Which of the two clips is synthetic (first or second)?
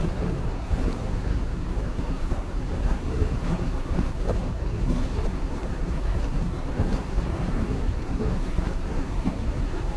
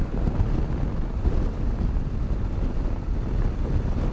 first